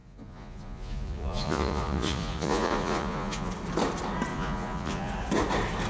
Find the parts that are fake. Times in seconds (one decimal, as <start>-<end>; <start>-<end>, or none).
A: 0.0-3.5; 4.3-5.1